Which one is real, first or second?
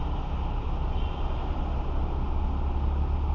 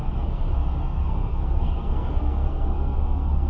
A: first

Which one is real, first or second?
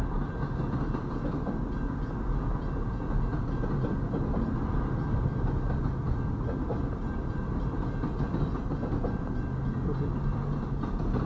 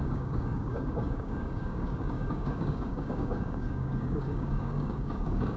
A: first